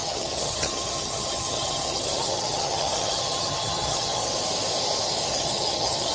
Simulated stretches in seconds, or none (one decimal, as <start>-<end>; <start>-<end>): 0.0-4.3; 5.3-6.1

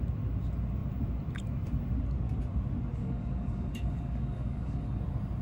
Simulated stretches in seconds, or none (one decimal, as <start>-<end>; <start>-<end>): 3.0-5.0

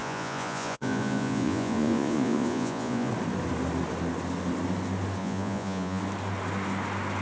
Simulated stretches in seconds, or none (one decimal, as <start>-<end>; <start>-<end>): 0.0-3.1; 5.2-6.0